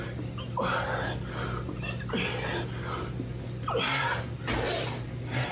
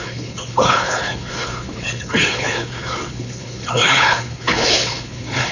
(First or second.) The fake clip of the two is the second